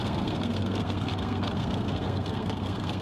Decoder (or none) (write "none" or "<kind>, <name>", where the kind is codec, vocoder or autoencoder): codec, SNAC